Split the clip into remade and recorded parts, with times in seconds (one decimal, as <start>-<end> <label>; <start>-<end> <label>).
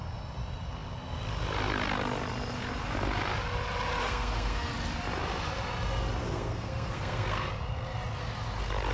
0.0-4.0 recorded; 4.0-4.7 remade; 4.7-6.2 recorded; 6.2-7.5 remade; 7.5-8.9 recorded